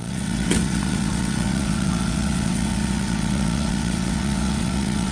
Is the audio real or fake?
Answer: fake